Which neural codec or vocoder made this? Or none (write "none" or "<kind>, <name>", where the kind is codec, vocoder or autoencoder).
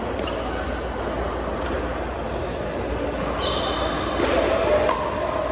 none